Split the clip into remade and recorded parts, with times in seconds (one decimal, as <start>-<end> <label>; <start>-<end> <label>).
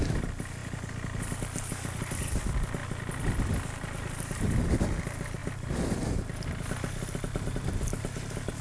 0.0-8.6 recorded